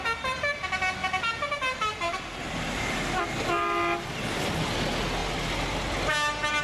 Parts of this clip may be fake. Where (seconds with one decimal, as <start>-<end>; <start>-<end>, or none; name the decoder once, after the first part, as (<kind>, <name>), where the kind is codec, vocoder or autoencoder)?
1.0-3.2 (vocoder, BigVGAN v2)